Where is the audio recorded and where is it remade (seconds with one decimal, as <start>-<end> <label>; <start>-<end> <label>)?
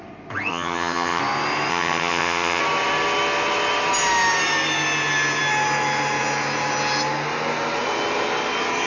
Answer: 0.0-0.5 recorded; 0.5-1.2 remade; 1.2-1.7 recorded; 1.7-2.6 remade; 2.6-8.9 recorded